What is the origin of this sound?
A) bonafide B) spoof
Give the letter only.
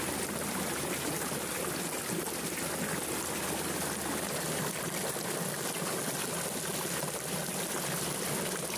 A